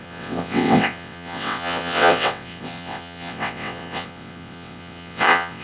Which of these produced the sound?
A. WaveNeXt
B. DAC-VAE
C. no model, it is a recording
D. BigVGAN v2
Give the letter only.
A